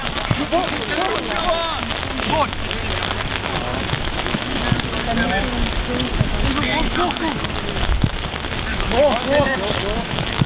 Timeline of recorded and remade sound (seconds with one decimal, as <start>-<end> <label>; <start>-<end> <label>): 0.0-3.7 recorded; 3.7-4.6 remade; 4.6-6.3 recorded; 6.3-7.4 remade; 7.4-8.7 recorded; 8.7-10.5 remade